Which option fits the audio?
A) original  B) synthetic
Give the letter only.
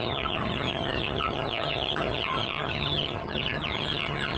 B